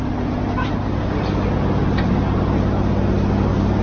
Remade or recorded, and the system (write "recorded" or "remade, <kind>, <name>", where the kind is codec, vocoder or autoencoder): recorded